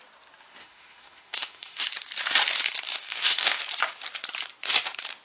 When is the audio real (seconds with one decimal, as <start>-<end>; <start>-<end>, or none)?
0.0-0.6; 1.9-2.9; 3.6-5.2